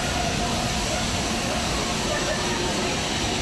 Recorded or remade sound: recorded